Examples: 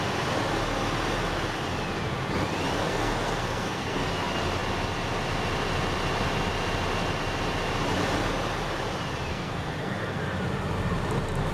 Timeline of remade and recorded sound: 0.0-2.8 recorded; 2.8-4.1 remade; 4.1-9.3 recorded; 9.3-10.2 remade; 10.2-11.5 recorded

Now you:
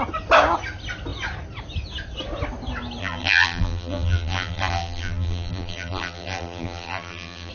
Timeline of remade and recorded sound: 0.0-3.0 recorded; 3.0-7.5 remade

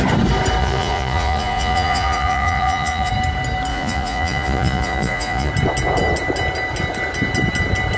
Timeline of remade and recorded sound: 0.0-0.6 recorded; 0.6-3.1 remade; 3.1-3.7 recorded; 3.7-5.5 remade; 5.5-8.0 recorded